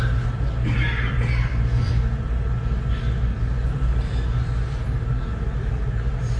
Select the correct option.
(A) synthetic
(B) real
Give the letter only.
B